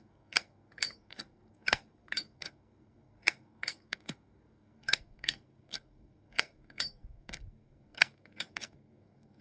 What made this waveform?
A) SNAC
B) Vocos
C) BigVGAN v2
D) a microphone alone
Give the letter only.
A